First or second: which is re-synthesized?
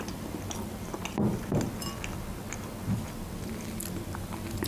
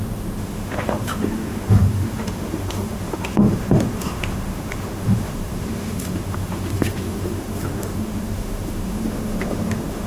second